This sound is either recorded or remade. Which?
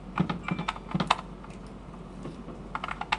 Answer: recorded